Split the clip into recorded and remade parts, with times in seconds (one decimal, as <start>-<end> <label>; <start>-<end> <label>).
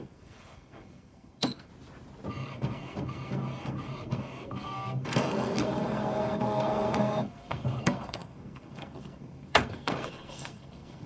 0.0-1.7 remade; 1.7-2.3 recorded; 2.3-11.1 remade